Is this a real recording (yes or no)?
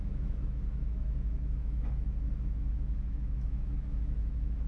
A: no